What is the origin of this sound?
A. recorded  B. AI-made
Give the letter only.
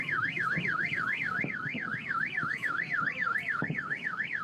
B